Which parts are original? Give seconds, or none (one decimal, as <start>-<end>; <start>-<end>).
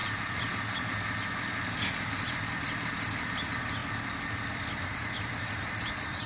0.0-1.7